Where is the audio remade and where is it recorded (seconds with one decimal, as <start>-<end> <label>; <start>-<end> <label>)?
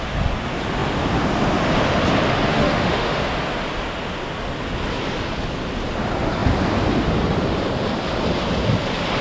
0.0-2.5 recorded; 2.5-3.2 remade; 3.2-9.2 recorded